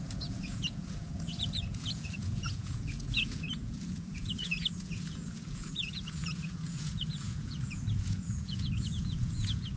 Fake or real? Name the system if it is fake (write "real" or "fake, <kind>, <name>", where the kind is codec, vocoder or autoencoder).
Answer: fake, vocoder, Vocos